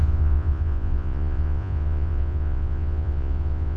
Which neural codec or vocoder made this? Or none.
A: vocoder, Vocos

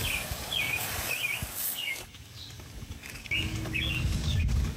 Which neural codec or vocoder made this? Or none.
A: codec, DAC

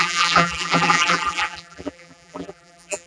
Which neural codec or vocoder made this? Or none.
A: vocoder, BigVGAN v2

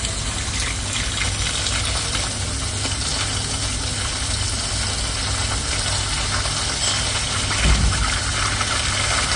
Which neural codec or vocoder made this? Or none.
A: none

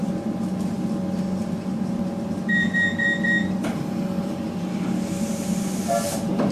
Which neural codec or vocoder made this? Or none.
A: vocoder, BigVGAN v2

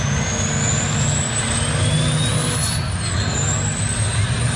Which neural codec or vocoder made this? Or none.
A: none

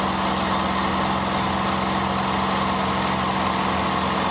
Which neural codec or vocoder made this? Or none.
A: none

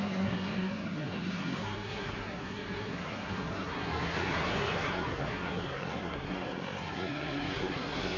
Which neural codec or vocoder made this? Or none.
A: codec, SNAC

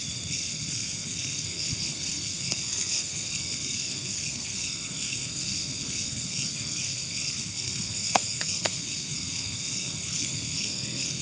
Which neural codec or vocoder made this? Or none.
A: codec, SNAC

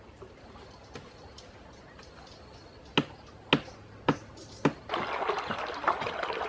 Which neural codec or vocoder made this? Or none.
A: none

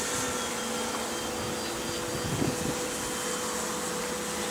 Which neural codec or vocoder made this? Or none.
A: none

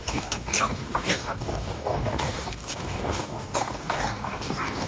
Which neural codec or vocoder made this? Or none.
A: codec, DAC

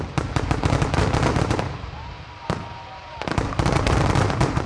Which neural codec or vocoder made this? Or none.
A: vocoder, BigVGAN v2